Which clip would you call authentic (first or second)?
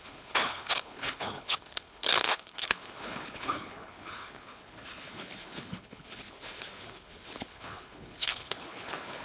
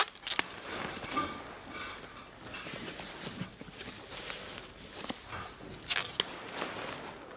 second